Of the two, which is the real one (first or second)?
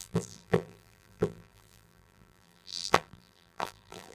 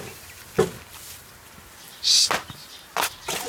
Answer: second